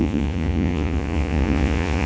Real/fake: fake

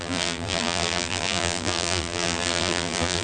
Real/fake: fake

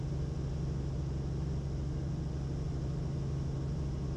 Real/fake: real